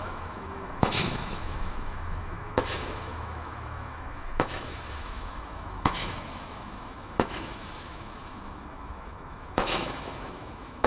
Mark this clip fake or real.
fake